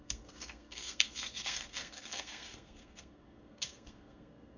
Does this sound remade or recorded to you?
remade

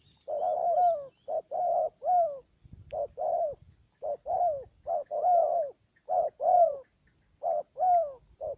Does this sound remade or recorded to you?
recorded